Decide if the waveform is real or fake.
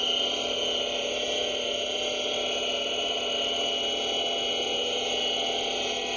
real